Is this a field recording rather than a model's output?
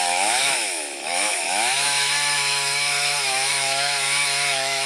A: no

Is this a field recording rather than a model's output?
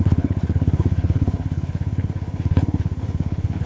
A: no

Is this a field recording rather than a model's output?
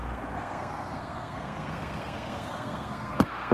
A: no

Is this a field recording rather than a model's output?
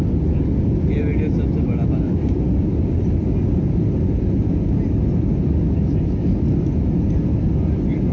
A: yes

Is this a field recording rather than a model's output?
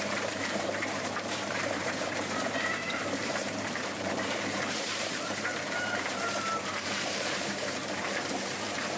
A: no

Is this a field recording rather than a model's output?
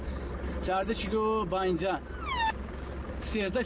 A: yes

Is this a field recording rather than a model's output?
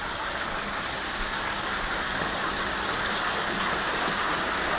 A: yes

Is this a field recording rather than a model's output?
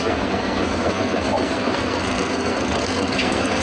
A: no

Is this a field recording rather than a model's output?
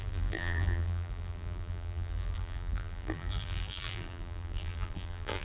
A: no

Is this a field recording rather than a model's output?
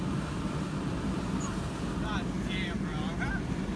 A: yes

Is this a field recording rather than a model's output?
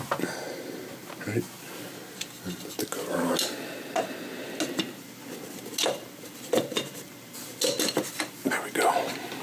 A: yes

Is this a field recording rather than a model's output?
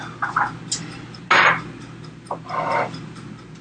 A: yes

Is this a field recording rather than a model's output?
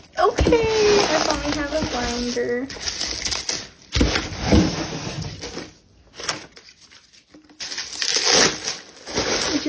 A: yes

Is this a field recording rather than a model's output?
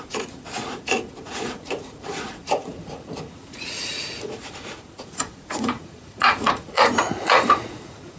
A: no